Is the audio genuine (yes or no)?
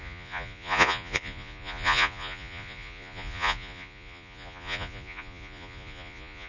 no